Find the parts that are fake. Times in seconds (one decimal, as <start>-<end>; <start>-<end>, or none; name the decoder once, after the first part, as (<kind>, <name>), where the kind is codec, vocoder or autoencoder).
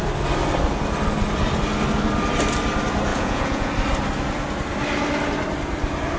3.1-3.7 (vocoder, Vocos)